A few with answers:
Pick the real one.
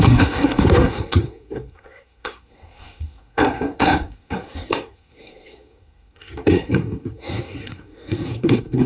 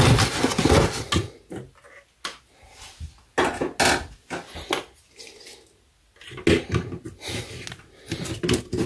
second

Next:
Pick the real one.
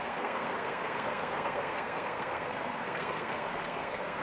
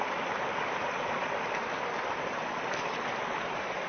second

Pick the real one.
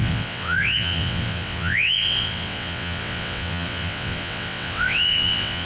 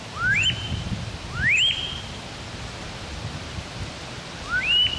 second